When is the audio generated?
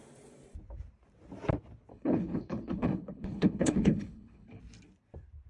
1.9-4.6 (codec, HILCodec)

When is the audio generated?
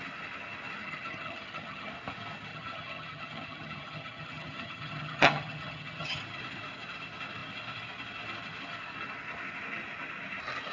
0.8-1.9 (vocoder, HiFi-GAN); 2.5-6.2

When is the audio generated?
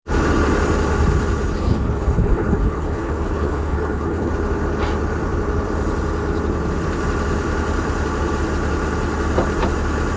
1.6-4.3 (codec, HILCodec)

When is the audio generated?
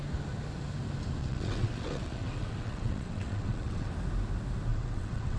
1.2-3.9 (vocoder, WaveNeXt); 4.7-5.4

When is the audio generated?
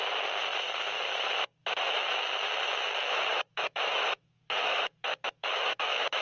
1.6-3.1 (autoencoder, DAC-VAE); 3.5-6.2